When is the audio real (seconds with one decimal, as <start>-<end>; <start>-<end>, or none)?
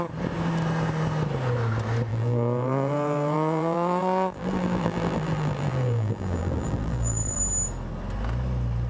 0.0-2.1; 7.4-8.9